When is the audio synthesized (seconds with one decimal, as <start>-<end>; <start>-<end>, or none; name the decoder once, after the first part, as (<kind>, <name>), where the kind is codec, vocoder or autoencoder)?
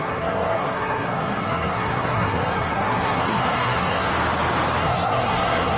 0.0-4.1 (codec, SNAC); 4.8-5.8